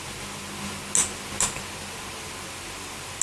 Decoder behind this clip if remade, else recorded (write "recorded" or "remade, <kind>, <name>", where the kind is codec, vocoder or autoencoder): recorded